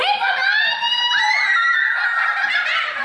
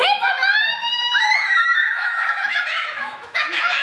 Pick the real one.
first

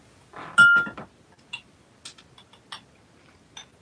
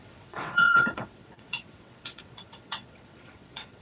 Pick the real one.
first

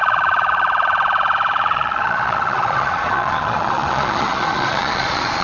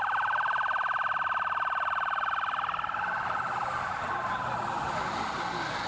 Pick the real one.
second